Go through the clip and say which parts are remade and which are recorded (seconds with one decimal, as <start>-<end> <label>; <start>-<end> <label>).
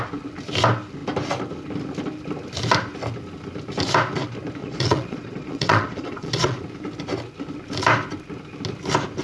0.0-4.6 recorded; 4.6-6.6 remade; 6.6-9.2 recorded